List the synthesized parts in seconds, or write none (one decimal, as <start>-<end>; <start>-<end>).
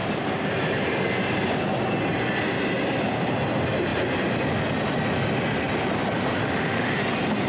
6.4-7.0